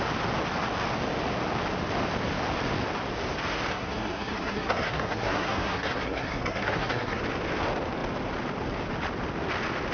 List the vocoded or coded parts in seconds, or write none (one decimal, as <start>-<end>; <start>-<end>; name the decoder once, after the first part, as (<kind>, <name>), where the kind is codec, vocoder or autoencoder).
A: 3.7-7.2 (codec, SNAC)